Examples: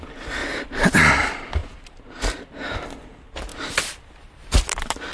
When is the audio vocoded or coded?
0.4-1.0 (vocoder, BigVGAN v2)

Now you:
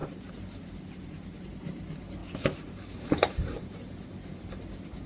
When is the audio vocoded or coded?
0.0-1.4 (vocoder, BigVGAN v2); 2.2-5.1

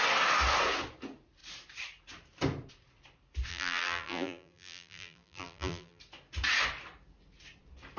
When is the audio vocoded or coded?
3.5-6.0 (vocoder, BigVGAN v2)

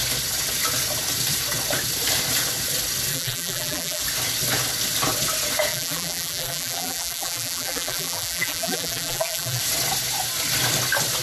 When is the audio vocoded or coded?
3.1-4.0 (vocoder, BigVGAN v2); 5.7-9.6

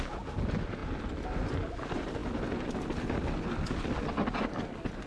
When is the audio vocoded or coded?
none

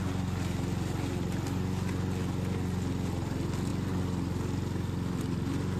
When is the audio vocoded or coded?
none

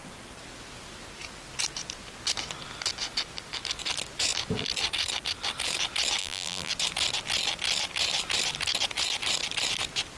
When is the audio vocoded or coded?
6.2-6.7 (vocoder, BigVGAN v2)